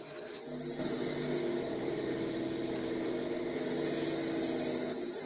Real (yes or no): yes